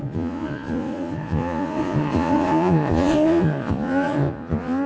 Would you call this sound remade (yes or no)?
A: yes